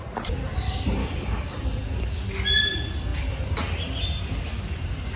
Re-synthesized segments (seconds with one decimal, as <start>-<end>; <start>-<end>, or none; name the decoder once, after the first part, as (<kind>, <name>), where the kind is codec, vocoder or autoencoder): 1.0-1.6 (codec, DAC)